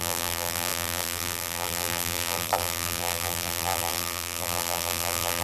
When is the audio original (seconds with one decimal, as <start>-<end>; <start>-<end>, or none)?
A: none